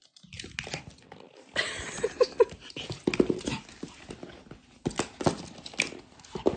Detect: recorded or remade recorded